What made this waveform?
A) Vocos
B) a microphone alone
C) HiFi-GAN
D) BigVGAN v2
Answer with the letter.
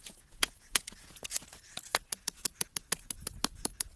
A